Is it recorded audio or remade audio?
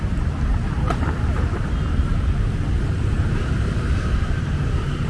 remade